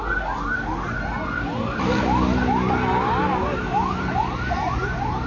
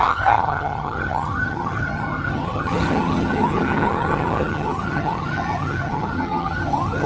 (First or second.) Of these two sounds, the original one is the first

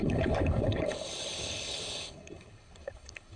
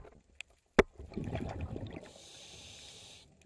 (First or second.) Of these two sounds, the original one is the second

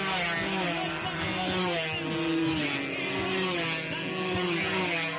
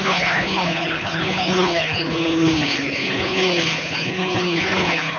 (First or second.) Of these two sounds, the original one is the first